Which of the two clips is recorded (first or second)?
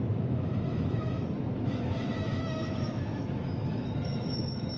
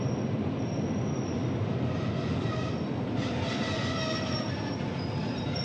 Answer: second